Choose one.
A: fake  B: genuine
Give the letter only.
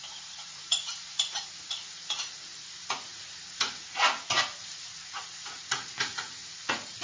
A